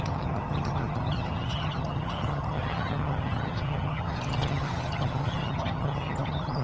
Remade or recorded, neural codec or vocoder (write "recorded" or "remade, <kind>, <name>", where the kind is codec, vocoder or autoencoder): remade, vocoder, HiFi-GAN